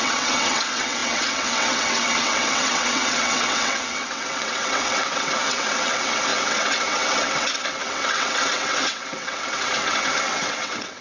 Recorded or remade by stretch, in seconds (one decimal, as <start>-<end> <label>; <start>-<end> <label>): 0.0-11.0 remade